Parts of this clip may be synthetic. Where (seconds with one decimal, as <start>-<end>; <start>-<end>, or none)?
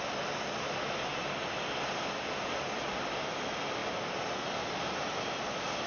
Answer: none